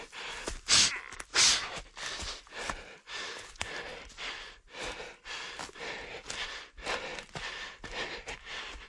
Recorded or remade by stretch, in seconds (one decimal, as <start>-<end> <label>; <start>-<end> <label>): 0.0-1.3 recorded; 1.3-2.4 remade; 2.4-8.9 recorded